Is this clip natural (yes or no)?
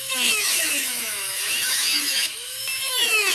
no